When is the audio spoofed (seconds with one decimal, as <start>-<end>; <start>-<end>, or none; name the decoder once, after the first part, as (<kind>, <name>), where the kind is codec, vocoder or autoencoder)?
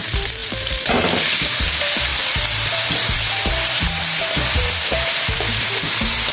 0.0-6.3 (vocoder, BigVGAN v2)